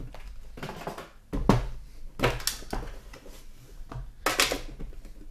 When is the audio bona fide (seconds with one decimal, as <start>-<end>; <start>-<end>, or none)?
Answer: 0.0-5.3